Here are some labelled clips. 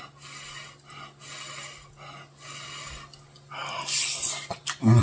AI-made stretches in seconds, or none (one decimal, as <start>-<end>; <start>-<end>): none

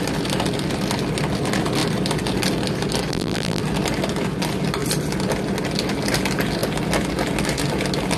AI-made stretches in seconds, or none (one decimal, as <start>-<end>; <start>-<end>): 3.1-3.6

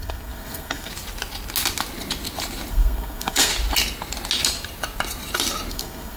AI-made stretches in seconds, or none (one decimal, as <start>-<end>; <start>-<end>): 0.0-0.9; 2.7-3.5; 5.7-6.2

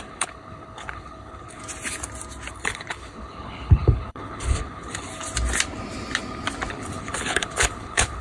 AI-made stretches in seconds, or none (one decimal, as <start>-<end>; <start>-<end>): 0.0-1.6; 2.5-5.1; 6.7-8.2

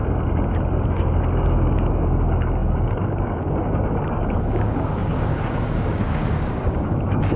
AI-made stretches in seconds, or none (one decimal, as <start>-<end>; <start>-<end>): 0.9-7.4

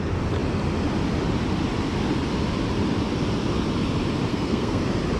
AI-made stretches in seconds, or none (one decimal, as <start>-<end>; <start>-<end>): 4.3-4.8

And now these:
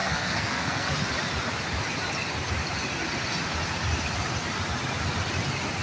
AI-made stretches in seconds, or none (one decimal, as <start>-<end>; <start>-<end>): 0.0-0.9